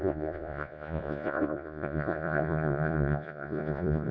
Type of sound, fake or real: fake